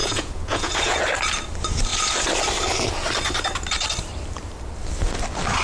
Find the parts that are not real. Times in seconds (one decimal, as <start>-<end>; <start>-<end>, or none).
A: 0.0-1.0